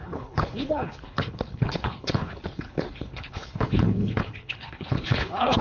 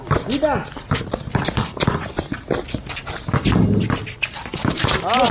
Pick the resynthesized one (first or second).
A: first